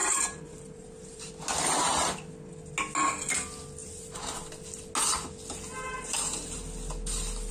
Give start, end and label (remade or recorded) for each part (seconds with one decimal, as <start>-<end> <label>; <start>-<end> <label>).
0.0-1.3 remade; 1.3-3.8 recorded; 3.8-4.4 remade; 4.4-5.7 recorded; 5.7-6.6 remade; 6.6-7.5 recorded